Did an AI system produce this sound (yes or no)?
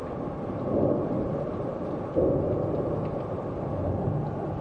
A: no